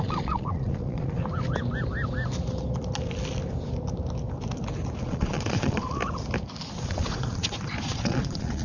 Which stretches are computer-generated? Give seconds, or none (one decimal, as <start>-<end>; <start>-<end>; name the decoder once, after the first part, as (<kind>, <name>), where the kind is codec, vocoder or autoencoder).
0.0-1.2 (vocoder, Vocos); 5.0-6.0; 6.8-8.6